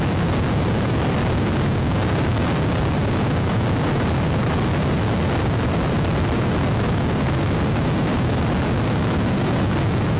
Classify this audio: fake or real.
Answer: real